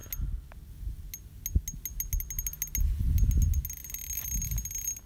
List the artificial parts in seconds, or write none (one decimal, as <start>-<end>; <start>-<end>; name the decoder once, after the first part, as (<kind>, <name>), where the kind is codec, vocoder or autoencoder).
none